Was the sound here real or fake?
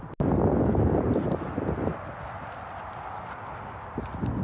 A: real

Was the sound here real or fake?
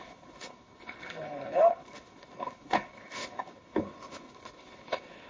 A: fake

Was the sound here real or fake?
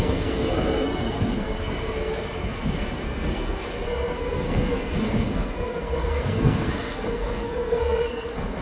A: fake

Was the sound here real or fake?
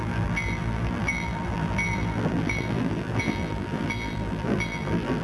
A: fake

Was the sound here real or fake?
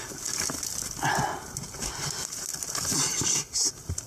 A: real